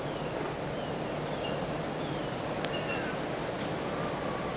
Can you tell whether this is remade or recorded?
recorded